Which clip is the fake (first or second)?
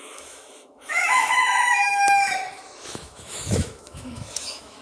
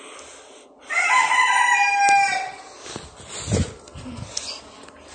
first